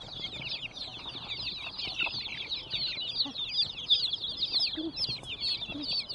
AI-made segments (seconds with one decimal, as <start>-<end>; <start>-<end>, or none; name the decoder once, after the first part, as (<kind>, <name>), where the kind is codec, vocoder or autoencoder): none